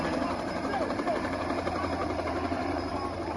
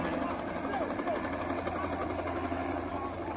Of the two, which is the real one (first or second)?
second